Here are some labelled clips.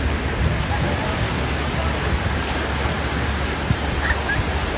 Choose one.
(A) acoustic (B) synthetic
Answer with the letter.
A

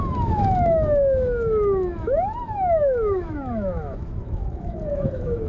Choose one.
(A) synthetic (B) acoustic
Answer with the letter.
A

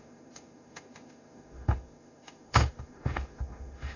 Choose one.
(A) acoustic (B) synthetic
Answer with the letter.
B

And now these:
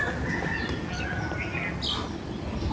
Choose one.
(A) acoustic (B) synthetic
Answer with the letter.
A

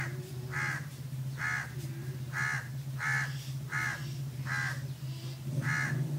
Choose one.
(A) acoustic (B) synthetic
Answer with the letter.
A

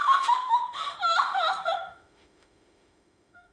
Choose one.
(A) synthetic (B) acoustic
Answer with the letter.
A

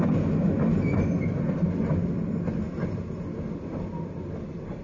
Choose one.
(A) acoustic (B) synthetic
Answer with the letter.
A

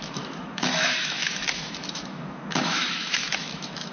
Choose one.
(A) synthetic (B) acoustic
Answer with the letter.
A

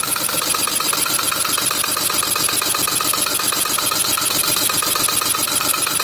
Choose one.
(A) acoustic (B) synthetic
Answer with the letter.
A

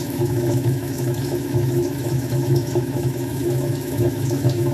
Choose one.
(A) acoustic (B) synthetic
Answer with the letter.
B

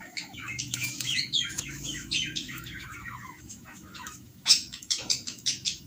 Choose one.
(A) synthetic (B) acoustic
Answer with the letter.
A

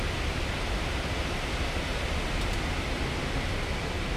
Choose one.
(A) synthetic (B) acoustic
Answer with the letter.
B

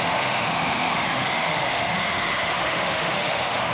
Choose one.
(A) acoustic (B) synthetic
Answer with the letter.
B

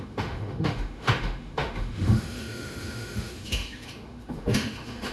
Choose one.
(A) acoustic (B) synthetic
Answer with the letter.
B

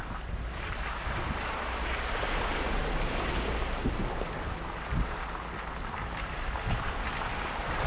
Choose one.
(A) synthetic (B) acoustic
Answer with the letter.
B